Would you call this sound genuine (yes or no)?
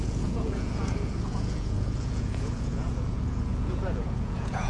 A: no